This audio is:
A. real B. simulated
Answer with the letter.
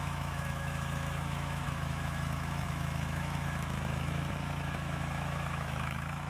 B